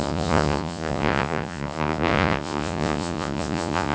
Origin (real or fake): fake